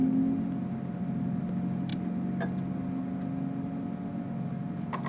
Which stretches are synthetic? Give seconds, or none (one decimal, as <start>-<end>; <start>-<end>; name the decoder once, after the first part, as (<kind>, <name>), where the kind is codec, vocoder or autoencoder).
none